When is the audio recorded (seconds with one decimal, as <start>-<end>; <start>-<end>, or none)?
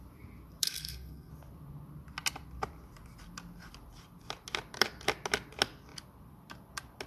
0.0-0.6; 1.3-7.1